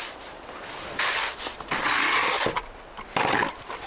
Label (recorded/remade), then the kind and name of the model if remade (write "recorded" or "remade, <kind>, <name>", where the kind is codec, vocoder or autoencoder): recorded